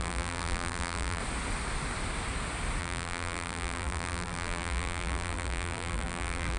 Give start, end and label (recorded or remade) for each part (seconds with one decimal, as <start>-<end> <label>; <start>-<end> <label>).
0.0-1.2 remade; 1.2-2.8 recorded; 2.8-6.6 remade